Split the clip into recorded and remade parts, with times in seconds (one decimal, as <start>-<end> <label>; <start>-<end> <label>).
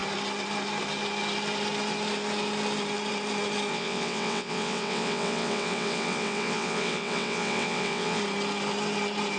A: 0.0-3.7 recorded; 3.7-8.2 remade; 8.2-9.4 recorded